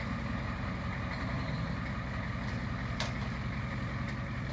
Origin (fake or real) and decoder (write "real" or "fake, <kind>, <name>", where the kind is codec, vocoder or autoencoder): real